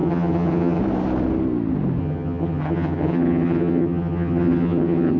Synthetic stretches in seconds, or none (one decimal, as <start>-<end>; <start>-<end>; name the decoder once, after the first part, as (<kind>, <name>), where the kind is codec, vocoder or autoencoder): 0.0-0.8 (vocoder, HiFi-GAN); 2.0-5.2